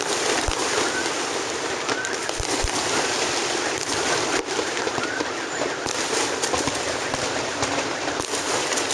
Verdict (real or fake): fake